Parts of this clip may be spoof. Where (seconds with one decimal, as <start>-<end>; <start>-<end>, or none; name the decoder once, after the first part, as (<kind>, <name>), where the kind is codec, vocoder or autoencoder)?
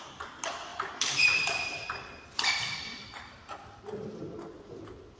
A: 0.7-3.8 (vocoder, BigVGAN v2)